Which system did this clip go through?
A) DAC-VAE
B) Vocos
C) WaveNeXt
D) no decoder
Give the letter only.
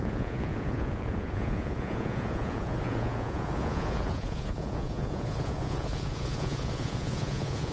B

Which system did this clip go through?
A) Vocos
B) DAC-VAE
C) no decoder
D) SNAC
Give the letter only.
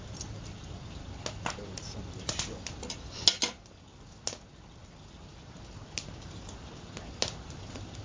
C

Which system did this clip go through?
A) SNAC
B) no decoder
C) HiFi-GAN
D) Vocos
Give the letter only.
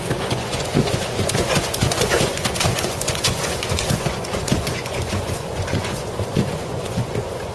D